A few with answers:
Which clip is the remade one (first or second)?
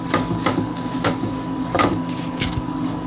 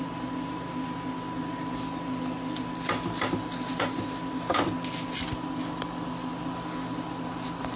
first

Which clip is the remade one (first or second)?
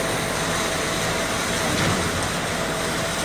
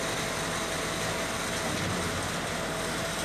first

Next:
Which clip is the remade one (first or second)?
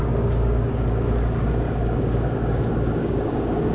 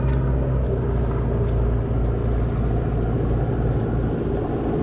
first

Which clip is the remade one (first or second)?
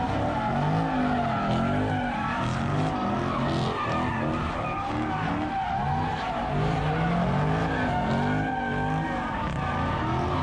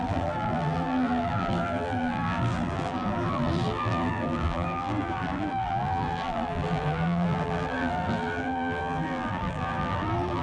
second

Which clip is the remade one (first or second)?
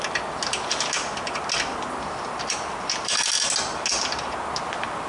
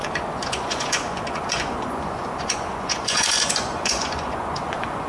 second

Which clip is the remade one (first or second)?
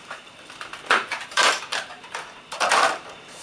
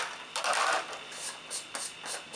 first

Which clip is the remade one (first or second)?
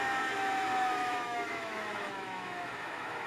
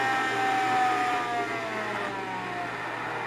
first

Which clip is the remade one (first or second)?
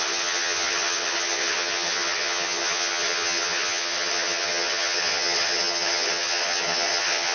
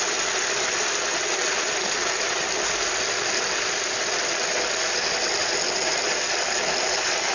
first